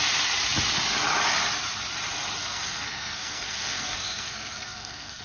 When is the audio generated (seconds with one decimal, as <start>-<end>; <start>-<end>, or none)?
2.4-5.2